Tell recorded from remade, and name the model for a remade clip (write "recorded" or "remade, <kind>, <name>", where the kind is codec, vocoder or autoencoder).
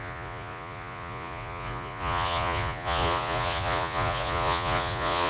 remade, vocoder, Vocos